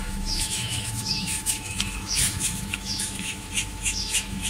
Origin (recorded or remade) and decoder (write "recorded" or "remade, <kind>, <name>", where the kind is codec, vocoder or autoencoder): remade, autoencoder, DAC-VAE